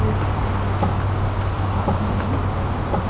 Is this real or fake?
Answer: real